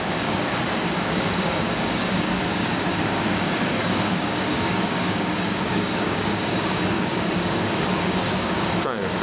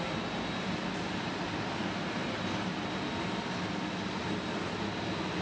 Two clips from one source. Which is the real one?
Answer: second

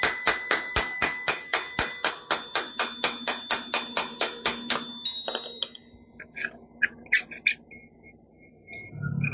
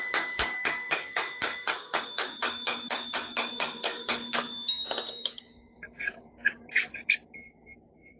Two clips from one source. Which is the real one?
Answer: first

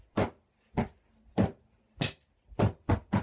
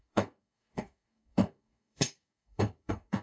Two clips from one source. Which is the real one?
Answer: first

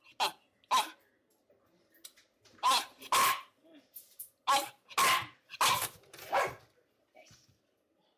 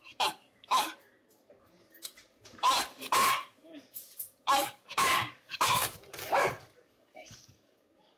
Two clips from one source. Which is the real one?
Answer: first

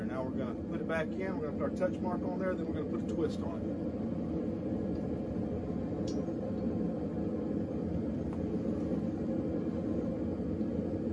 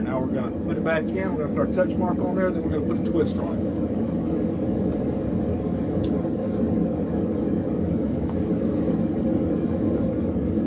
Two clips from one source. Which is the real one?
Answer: first